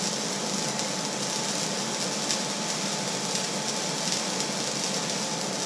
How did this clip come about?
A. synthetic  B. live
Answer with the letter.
B